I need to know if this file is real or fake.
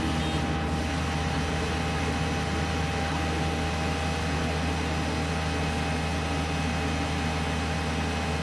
real